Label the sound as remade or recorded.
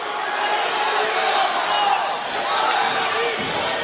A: recorded